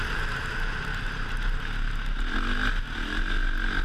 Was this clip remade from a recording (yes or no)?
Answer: no